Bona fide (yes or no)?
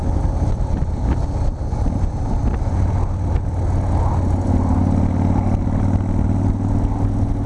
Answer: yes